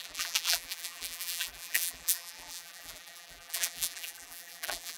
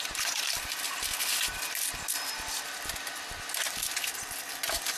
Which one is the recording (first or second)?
second